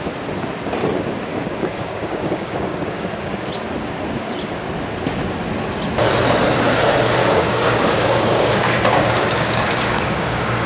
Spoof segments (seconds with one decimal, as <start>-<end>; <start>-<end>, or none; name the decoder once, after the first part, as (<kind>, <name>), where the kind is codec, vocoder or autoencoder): 1.3-3.5 (codec, DAC); 7.2-10.7